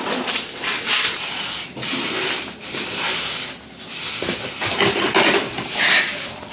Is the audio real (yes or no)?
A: yes